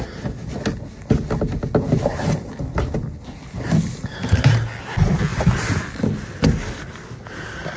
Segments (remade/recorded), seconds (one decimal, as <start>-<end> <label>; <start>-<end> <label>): 0.0-7.8 recorded